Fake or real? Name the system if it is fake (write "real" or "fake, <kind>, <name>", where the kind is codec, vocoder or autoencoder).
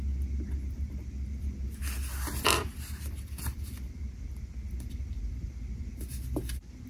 real